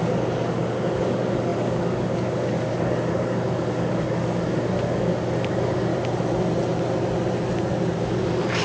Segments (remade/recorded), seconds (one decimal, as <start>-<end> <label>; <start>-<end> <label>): 0.0-5.9 remade; 5.9-8.0 recorded; 8.0-8.6 remade